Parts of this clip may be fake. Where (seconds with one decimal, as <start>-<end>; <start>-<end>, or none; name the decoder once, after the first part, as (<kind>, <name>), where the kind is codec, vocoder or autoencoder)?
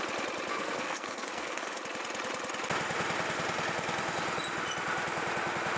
0.5-1.8 (codec, SNAC)